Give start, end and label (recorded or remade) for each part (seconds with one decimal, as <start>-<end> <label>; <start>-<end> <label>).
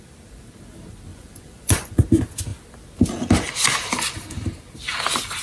0.0-1.1 recorded; 1.1-2.0 remade; 2.0-5.4 recorded